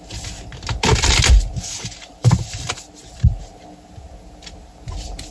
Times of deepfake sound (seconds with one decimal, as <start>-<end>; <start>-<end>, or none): none